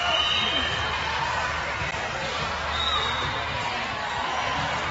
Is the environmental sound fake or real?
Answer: real